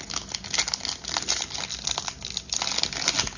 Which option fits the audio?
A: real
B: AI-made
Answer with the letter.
A